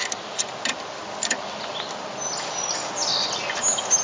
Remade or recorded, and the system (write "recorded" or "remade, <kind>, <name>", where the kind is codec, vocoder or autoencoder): recorded